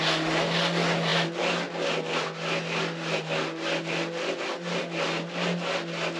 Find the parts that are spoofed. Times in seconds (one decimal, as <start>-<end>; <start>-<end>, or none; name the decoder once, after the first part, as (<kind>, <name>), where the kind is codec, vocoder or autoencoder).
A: none